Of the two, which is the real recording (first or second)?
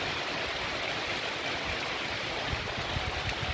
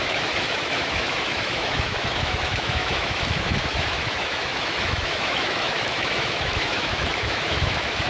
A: first